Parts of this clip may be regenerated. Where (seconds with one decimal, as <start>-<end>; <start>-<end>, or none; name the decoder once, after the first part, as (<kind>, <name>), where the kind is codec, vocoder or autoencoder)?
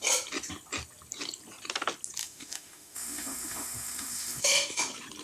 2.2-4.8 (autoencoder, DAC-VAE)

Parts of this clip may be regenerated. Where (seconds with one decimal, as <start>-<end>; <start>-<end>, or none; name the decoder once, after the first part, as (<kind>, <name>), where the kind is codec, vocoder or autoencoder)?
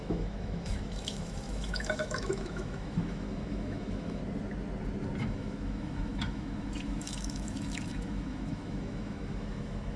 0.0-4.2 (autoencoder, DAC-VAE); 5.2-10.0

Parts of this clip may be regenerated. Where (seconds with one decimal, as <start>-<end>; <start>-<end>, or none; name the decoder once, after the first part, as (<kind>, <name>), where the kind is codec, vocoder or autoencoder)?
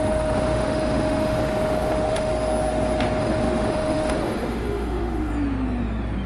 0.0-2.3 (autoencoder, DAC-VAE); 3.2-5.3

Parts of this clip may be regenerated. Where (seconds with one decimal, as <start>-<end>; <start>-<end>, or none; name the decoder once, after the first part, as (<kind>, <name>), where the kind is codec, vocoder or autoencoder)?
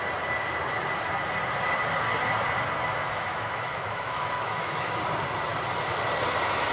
3.0-5.0 (autoencoder, DAC-VAE)